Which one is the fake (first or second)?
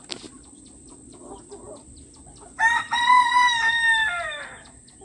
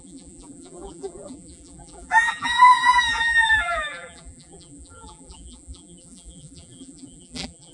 second